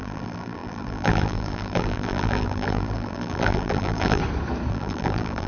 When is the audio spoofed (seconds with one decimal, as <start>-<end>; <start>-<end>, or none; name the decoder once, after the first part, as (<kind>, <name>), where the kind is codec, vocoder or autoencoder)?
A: 0.0-4.2 (vocoder, BigVGAN v2); 4.7-5.5